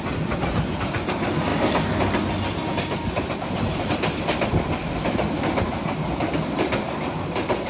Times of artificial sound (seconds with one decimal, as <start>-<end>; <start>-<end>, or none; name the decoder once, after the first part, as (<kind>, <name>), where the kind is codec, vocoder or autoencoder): none